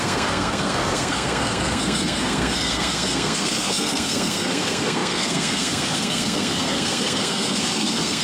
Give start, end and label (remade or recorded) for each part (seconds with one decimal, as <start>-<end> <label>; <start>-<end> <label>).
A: 0.0-8.2 remade